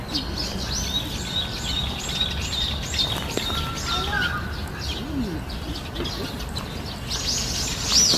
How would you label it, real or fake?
real